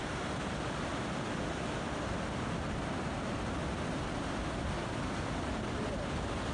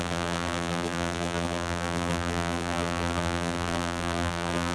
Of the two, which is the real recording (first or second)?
first